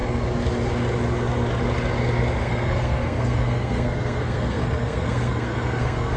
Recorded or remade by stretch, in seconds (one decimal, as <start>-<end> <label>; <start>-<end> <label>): 0.0-2.4 recorded; 2.4-6.2 remade